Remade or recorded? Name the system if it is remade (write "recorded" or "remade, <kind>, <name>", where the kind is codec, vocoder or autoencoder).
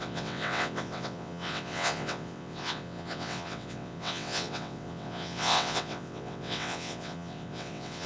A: remade, vocoder, WaveNeXt